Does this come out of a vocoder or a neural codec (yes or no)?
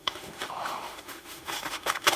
yes